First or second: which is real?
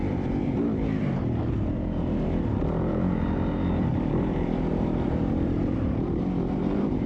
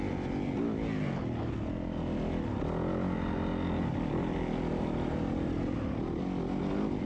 second